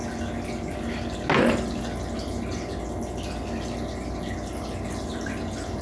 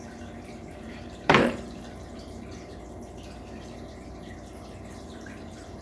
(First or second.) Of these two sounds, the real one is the first